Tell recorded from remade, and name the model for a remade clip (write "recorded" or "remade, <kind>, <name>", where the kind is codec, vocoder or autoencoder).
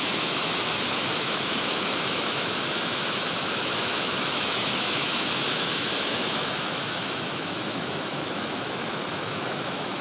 remade, autoencoder, DAC-VAE